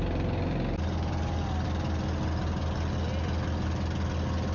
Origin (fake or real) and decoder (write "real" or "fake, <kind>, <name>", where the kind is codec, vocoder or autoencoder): real